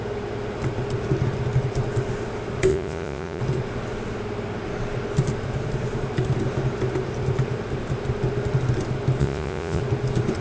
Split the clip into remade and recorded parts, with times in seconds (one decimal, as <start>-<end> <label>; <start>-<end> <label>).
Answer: 0.0-2.7 recorded; 2.7-3.4 remade; 3.4-9.2 recorded; 9.2-9.8 remade; 9.8-10.4 recorded